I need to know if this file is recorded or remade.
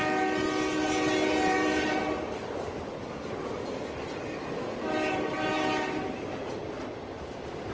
recorded